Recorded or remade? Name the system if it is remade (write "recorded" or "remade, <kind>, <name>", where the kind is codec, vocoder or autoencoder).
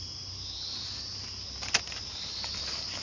recorded